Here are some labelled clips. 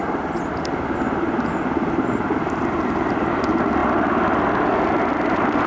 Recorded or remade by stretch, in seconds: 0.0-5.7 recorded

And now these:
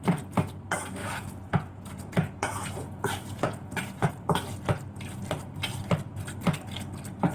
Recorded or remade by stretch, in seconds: 0.0-1.0 recorded; 1.0-4.1 remade; 4.1-7.3 recorded

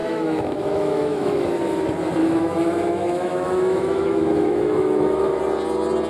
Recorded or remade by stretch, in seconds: 0.0-1.6 remade; 1.6-2.2 recorded; 2.2-5.4 remade; 5.4-6.1 recorded

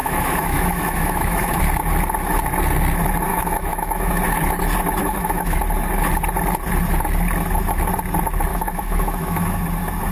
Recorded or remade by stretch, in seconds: 0.0-1.6 remade; 1.6-3.3 recorded; 3.3-4.1 remade; 4.1-5.0 recorded; 5.0-5.6 remade; 5.6-8.5 recorded; 8.5-9.6 remade; 9.6-10.1 recorded

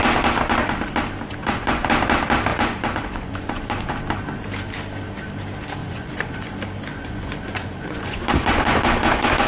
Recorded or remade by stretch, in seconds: 0.0-1.4 recorded; 1.4-1.9 remade; 1.9-2.5 recorded; 2.5-3.9 remade; 3.9-5.8 recorded; 5.8-6.5 remade; 6.5-6.9 recorded; 6.9-9.5 remade

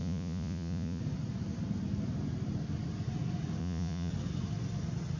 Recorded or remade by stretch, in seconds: 0.0-1.0 remade; 1.0-3.6 recorded; 3.6-4.1 remade; 4.1-5.2 recorded

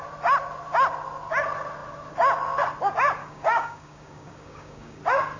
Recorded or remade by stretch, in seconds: 0.0-3.2 recorded; 3.2-5.0 remade; 5.0-5.4 recorded

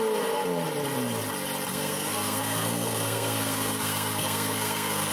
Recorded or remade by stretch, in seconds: 0.0-1.7 recorded; 1.7-5.1 remade